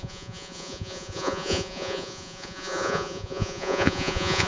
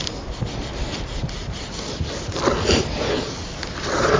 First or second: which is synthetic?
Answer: first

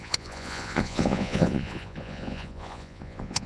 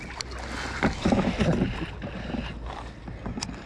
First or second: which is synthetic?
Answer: first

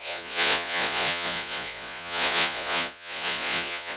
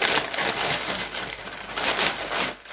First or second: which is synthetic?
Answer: first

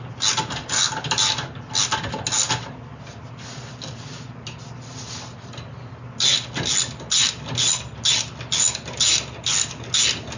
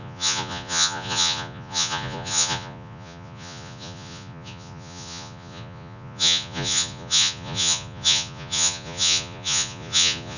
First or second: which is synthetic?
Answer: second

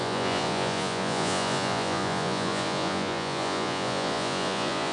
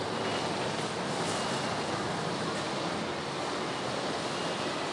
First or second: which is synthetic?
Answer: first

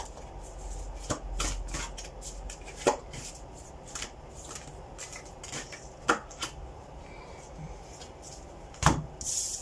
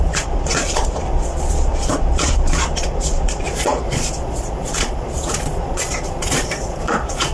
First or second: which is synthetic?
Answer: second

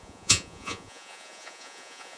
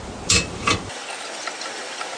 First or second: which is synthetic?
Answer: first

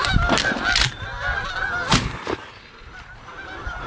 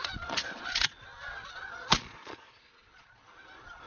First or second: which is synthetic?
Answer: second